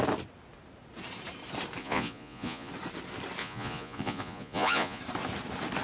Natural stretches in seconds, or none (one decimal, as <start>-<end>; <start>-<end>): 0.0-1.8; 2.7-3.4; 5.0-5.8